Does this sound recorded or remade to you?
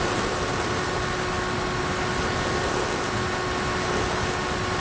recorded